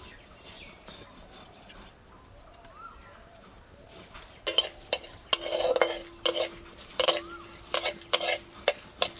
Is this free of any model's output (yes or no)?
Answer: yes